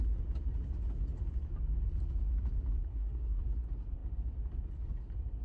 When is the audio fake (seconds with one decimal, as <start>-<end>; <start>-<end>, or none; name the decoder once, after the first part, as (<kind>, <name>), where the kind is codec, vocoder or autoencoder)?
2.9-3.4 (codec, SNAC)